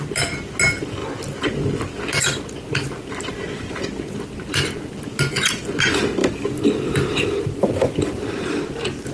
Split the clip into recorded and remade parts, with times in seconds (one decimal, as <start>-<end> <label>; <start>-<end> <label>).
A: 0.0-6.2 recorded; 6.2-7.7 remade; 7.7-9.1 recorded